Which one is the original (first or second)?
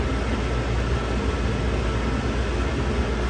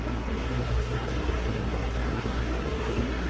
first